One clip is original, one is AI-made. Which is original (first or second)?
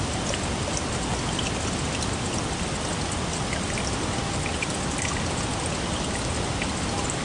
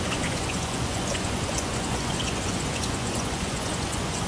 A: first